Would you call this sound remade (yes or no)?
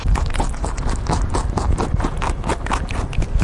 no